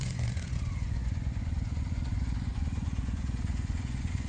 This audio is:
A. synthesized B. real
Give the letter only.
A